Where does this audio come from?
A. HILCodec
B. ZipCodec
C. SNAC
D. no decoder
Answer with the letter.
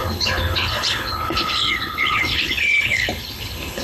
A